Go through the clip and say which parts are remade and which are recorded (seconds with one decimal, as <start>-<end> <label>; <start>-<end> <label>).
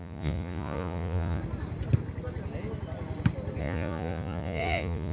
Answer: 0.0-1.4 remade; 1.4-3.6 recorded; 3.6-5.1 remade